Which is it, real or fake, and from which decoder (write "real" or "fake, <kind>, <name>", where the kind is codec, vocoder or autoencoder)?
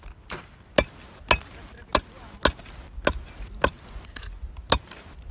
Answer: real